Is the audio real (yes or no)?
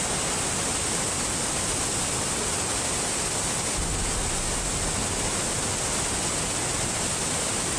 yes